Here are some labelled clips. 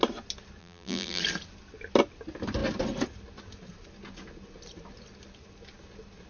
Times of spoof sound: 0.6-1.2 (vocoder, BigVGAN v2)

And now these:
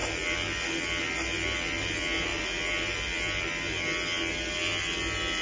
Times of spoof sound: none